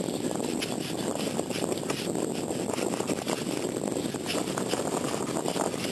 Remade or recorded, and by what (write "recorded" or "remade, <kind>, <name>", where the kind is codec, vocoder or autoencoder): recorded